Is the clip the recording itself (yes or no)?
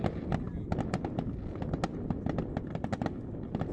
yes